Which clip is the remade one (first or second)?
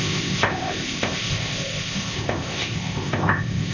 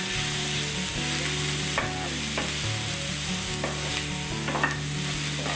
first